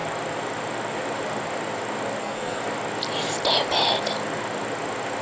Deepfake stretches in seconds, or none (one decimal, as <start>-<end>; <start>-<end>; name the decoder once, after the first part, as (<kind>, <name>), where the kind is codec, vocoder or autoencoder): 2.2-2.6 (codec, SNAC)